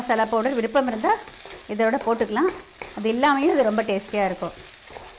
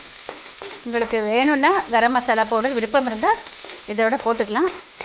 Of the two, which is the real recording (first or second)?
first